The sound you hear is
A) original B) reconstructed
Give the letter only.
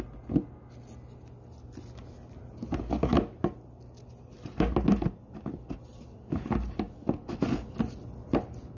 A